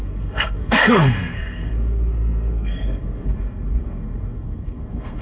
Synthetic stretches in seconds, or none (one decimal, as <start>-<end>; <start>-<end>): 0.0-5.2